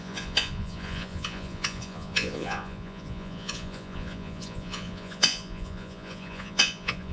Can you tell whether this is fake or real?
fake